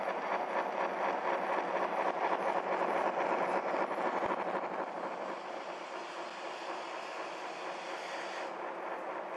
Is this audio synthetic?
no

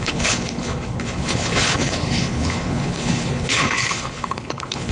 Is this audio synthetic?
yes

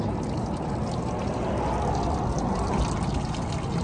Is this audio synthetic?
no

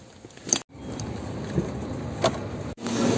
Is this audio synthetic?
no